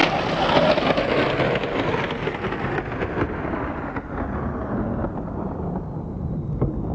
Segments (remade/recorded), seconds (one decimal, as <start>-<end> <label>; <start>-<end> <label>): 0.0-6.9 recorded